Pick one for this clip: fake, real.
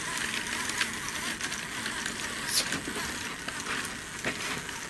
real